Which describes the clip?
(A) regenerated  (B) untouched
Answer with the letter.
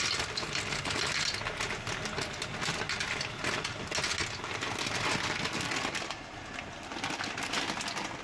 B